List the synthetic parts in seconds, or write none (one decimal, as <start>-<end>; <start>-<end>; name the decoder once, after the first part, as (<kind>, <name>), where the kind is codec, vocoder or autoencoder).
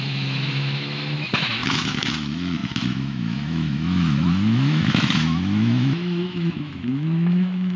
0.0-7.8 (autoencoder, DAC-VAE)